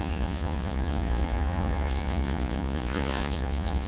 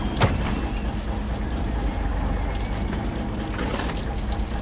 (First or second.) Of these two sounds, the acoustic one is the second